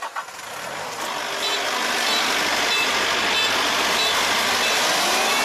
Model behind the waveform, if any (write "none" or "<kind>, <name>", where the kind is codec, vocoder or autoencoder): none